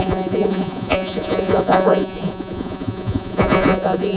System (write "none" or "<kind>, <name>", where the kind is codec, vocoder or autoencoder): vocoder, Vocos